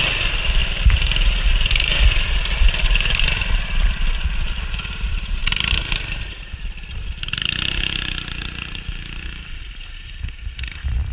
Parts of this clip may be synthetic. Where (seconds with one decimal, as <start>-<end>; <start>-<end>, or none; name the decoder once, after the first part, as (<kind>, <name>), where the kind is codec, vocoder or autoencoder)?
none